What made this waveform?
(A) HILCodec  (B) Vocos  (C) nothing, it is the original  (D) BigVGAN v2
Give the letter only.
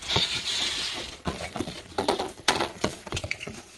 B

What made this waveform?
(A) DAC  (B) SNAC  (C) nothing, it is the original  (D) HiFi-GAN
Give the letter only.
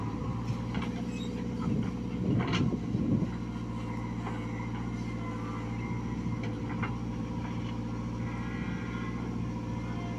C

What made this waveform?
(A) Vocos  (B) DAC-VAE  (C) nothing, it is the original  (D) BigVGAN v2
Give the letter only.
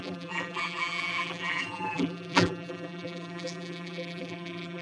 D